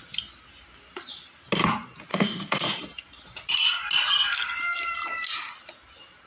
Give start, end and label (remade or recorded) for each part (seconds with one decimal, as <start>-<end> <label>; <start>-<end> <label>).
0.0-2.1 recorded; 2.1-2.6 remade; 2.6-6.3 recorded